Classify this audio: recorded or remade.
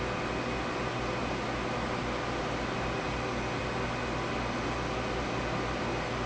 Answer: recorded